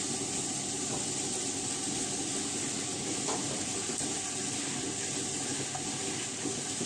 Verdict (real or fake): real